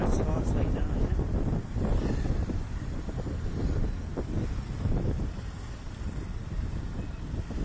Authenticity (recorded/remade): remade